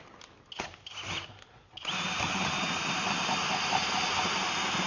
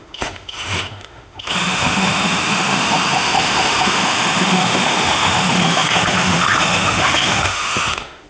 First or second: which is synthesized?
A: second